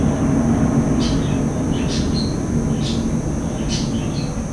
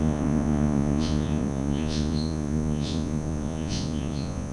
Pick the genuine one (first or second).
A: first